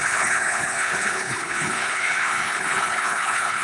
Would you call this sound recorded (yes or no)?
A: no